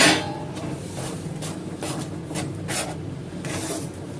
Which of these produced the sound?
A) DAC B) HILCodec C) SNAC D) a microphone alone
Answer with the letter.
D